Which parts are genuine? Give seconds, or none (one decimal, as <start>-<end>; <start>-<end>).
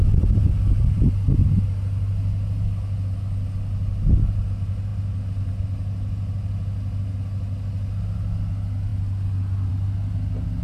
0.0-10.6